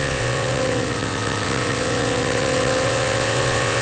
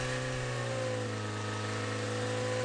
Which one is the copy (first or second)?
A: first